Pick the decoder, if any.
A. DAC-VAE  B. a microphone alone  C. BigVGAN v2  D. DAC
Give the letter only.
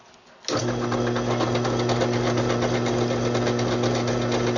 B